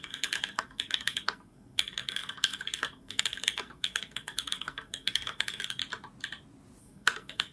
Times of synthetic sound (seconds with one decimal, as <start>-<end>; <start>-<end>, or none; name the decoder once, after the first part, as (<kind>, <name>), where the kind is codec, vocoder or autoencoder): 0.0-5.8 (codec, SNAC); 6.8-7.5